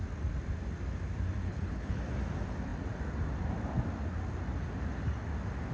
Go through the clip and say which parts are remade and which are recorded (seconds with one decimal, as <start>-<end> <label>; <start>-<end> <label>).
0.0-1.4 recorded; 1.4-2.0 remade; 2.0-5.7 recorded